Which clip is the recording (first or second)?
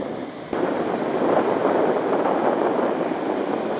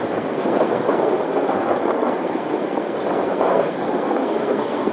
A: first